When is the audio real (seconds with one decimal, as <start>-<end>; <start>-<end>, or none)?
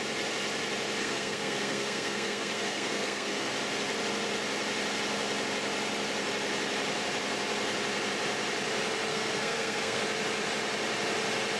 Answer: 0.0-1.0; 3.5-9.1; 10.0-11.6